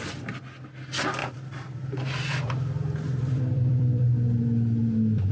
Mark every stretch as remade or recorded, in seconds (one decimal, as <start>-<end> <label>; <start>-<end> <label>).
0.0-1.2 recorded; 1.2-4.4 remade; 4.4-5.3 recorded